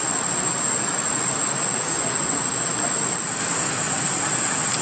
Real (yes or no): yes